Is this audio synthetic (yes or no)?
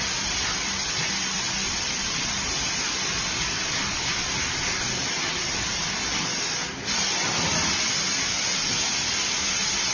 yes